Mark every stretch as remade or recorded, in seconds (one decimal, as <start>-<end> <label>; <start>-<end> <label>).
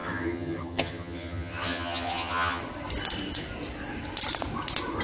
0.0-2.6 remade; 2.6-5.0 recorded